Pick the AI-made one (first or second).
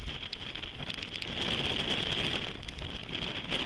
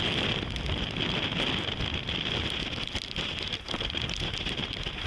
second